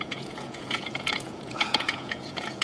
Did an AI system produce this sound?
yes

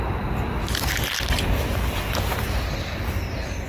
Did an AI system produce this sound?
no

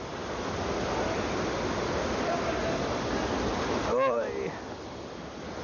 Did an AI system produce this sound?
no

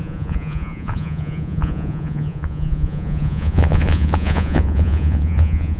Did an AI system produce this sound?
yes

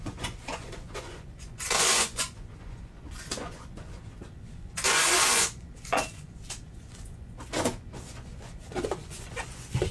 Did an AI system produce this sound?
yes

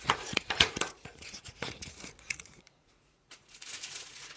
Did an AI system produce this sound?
yes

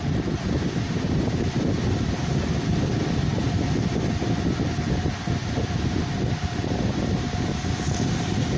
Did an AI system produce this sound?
no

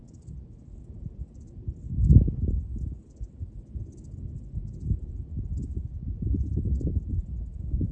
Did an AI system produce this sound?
no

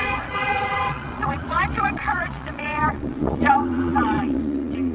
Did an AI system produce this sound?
yes